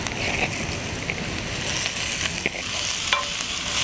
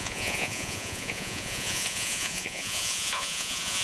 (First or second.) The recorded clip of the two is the first